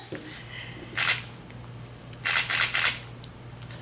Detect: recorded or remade recorded